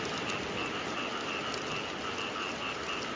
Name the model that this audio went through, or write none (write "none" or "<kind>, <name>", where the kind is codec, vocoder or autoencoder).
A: none